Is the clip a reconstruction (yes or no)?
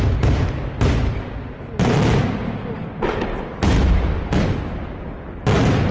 no